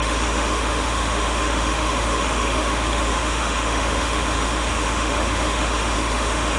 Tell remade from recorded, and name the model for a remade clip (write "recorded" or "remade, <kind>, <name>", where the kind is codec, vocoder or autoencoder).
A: remade, autoencoder, DAC-VAE